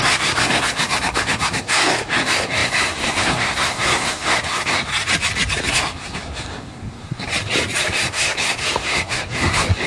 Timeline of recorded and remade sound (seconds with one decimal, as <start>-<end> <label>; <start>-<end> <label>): 0.0-4.9 remade; 4.9-5.7 recorded; 5.7-7.3 remade; 7.3-7.8 recorded; 7.8-9.9 remade